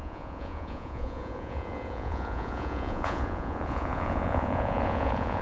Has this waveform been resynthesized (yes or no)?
yes